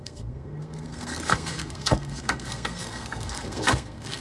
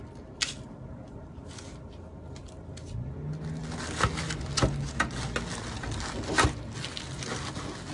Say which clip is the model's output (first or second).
first